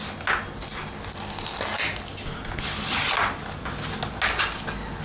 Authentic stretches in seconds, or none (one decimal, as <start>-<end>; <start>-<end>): 0.0-5.0